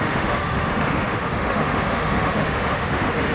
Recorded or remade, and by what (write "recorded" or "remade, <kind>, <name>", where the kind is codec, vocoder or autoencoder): remade, autoencoder, DAC-VAE